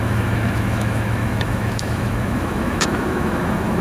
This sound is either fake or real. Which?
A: fake